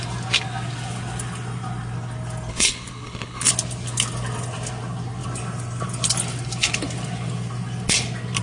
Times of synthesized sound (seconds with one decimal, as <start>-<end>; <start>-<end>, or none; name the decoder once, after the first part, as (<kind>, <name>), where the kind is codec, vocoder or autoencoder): 2.5-3.5 (codec, HILCodec)